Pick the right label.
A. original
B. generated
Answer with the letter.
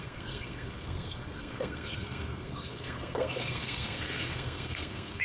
B